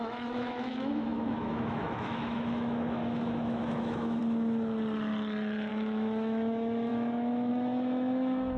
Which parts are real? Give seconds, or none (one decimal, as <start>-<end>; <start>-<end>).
4.2-5.7